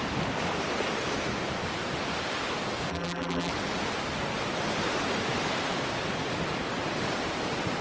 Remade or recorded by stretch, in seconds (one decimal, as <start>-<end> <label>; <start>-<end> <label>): 0.0-2.9 recorded; 2.9-3.5 remade; 3.5-7.8 recorded